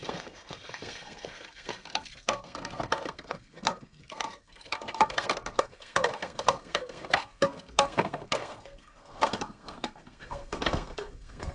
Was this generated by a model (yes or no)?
yes